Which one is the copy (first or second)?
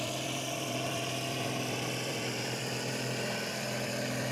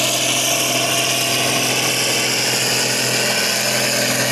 first